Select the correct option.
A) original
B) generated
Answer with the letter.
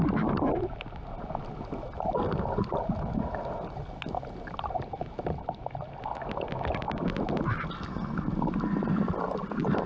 A